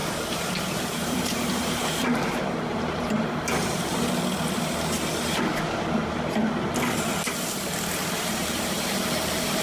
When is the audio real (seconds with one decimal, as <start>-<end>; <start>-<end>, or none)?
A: 0.5-1.0; 4.1-8.0